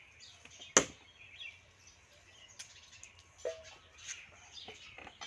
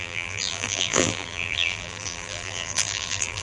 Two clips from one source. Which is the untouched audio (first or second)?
first